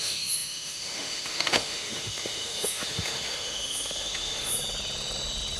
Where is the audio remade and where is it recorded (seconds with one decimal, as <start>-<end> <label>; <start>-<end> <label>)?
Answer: 0.0-4.5 remade; 4.5-5.6 recorded